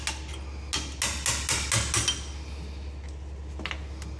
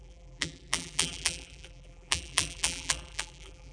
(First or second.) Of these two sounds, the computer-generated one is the second